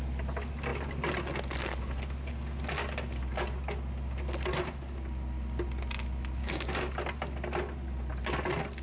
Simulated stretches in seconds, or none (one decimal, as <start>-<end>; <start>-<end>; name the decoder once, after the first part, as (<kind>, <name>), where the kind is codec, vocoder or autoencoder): 6.4-6.9 (codec, DAC)